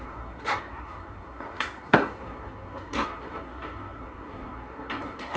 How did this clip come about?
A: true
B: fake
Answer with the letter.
B